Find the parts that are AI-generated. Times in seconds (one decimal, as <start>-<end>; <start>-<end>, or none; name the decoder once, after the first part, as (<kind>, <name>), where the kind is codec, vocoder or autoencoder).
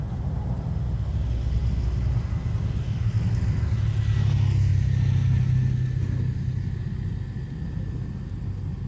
none